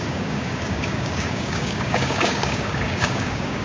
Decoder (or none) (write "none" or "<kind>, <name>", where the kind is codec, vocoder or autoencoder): codec, DAC